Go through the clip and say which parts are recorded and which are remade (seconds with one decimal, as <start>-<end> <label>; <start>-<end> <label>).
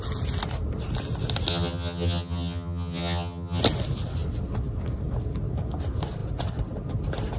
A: 0.0-1.5 recorded; 1.5-3.6 remade; 3.6-7.4 recorded